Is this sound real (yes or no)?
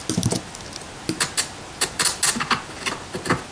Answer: yes